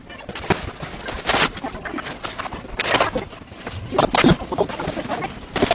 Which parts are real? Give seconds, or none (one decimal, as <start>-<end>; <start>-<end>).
0.0-5.7